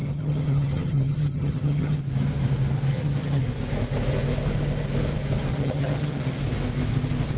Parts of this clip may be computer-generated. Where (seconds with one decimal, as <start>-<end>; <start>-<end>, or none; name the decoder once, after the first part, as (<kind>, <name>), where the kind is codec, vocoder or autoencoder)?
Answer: 0.0-2.0 (vocoder, HiFi-GAN); 2.9-3.4; 5.5-6.4